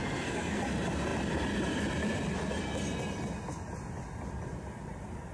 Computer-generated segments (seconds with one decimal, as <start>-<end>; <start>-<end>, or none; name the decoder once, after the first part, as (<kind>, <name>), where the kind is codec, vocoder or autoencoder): 0.0-0.6 (codec, SNAC)